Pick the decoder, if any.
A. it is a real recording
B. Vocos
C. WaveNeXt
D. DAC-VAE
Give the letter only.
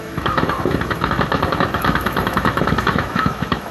D